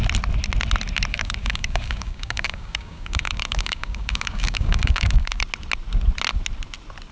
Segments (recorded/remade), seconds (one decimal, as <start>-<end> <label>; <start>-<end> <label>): 0.0-1.1 recorded; 1.1-5.4 remade; 5.4-7.1 recorded